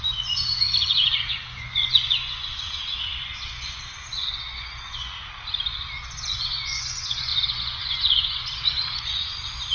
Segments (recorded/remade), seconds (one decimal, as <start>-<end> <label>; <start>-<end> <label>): 0.0-5.1 remade; 5.1-6.0 recorded; 6.0-9.7 remade